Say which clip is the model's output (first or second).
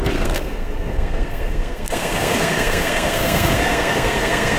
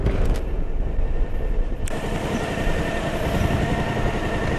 first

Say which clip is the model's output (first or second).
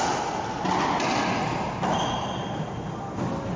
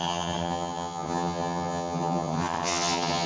second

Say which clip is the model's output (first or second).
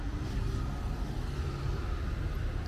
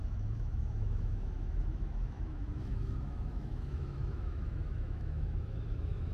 second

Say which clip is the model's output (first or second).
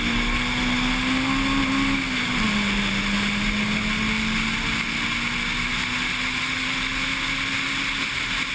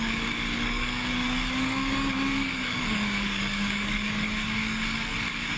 second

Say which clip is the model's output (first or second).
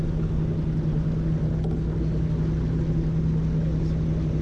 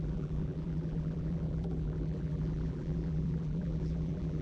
second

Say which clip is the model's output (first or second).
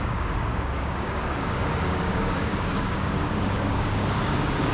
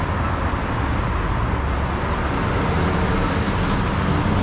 first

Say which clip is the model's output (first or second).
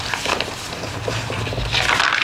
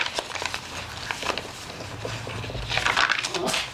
second